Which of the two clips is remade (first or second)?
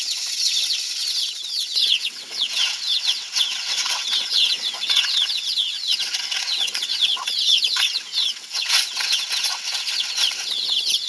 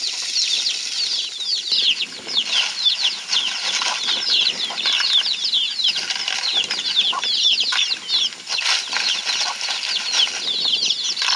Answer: first